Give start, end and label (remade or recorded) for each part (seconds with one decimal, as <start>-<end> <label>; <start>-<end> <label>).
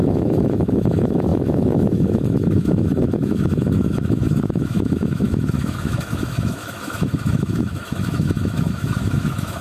0.0-9.6 remade